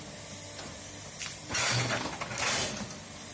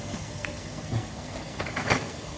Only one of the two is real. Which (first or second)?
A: first